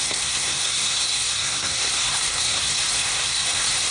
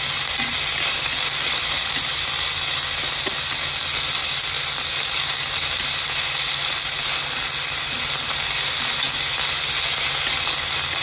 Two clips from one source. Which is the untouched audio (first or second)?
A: second